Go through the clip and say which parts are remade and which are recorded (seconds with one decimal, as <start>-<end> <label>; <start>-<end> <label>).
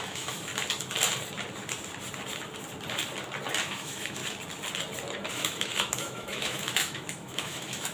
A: 0.0-0.5 remade; 0.5-3.6 recorded; 3.6-4.2 remade; 4.2-5.3 recorded; 5.3-7.9 remade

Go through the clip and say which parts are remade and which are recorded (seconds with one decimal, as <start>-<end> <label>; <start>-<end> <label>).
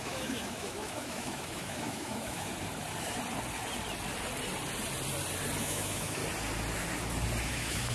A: 0.0-2.5 remade; 2.5-5.6 recorded; 5.6-6.2 remade; 6.2-7.5 recorded; 7.5-7.9 remade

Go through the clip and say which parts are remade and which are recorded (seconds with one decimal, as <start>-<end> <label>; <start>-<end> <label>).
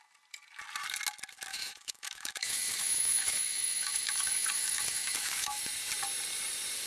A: 0.0-1.5 recorded; 1.5-5.6 remade; 5.6-6.9 recorded